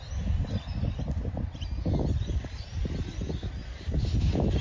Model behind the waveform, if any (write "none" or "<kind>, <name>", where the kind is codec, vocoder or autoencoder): none